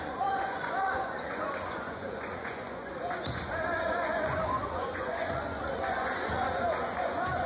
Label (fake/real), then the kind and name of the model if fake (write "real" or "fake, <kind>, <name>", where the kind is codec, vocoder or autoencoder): fake, vocoder, Vocos